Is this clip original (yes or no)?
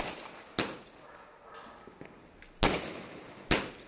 yes